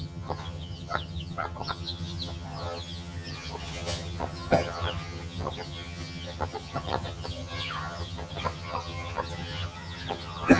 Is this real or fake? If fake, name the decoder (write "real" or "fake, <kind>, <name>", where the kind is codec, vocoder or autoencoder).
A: fake, vocoder, HiFi-GAN